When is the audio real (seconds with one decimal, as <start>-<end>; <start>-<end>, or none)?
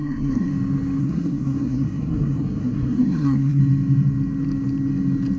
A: 0.5-1.0; 3.6-5.4